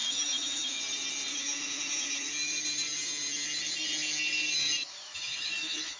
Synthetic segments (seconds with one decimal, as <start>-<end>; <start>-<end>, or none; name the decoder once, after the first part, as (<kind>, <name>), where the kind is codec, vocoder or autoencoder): 0.0-0.8 (autoencoder, DAC-VAE); 1.3-2.3; 4.8-6.0